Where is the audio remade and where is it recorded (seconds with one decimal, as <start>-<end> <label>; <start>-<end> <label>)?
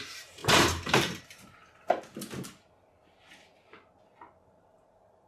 0.0-1.6 remade; 1.6-4.4 recorded; 4.4-5.3 remade